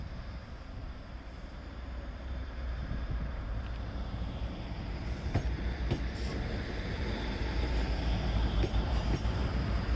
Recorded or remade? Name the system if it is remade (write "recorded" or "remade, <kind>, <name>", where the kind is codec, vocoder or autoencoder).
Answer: remade, vocoder, BigVGAN v2